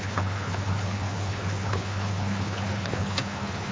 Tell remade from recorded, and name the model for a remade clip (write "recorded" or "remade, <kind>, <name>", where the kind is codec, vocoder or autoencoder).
remade, codec, HILCodec